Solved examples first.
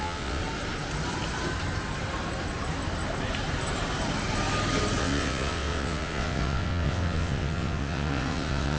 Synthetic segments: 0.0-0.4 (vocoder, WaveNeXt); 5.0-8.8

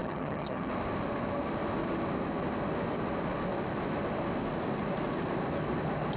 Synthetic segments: 0.0-0.7 (vocoder, HiFi-GAN)